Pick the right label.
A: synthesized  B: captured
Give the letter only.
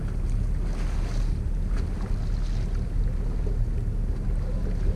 B